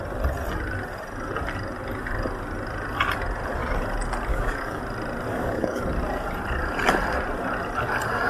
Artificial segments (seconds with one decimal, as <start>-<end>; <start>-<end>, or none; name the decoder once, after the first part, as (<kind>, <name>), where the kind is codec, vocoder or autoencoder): 4.3-4.8 (codec, DAC); 5.3-5.8